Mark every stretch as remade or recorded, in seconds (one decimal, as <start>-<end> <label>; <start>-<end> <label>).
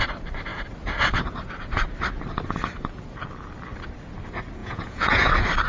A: 0.0-4.6 recorded; 4.6-5.3 remade; 5.3-5.7 recorded